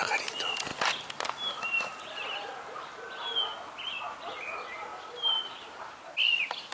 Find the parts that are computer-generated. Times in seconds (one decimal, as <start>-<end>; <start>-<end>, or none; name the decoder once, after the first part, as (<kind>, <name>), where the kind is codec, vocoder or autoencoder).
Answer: 4.9-5.8 (vocoder, BigVGAN v2)

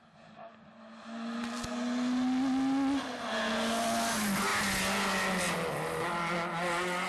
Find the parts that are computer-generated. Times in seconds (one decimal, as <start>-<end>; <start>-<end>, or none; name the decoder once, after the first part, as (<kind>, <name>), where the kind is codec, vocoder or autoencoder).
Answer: none

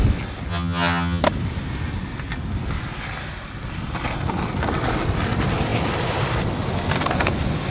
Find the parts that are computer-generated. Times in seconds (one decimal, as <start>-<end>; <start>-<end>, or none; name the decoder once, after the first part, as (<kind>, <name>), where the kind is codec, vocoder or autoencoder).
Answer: 0.5-1.2 (vocoder, HiFi-GAN)

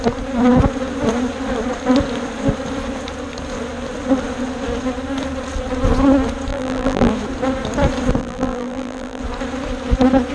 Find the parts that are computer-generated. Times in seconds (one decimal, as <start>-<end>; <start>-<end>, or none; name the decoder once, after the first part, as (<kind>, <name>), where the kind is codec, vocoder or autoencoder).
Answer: 6.5-7.1 (vocoder, BigVGAN v2); 8.2-9.2

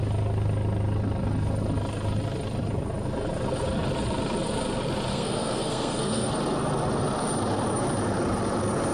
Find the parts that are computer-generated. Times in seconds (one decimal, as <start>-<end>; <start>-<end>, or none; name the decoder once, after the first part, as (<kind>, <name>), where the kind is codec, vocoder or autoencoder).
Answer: 5.1-6.3 (codec, SNAC)